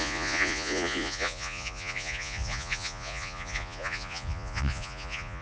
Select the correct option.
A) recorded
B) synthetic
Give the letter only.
B